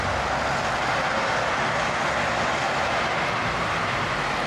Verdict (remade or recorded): recorded